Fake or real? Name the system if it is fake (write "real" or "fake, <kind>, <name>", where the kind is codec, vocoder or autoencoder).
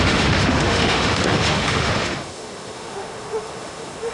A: fake, autoencoder, DAC-VAE